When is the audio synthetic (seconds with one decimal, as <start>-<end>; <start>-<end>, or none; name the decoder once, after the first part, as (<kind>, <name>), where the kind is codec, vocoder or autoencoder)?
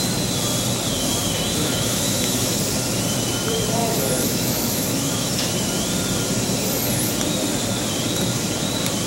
1.6-2.6 (autoencoder, DAC-VAE); 3.8-5.5